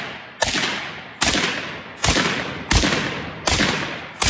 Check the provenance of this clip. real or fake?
real